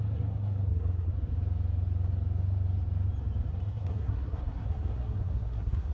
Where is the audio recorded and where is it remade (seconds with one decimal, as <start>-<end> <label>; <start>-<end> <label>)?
0.0-1.1 remade; 1.1-3.5 recorded; 3.5-5.9 remade